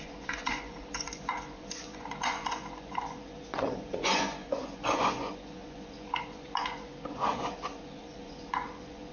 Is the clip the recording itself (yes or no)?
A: no